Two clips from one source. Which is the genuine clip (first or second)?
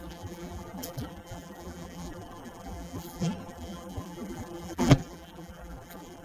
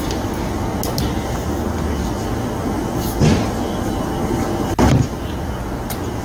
second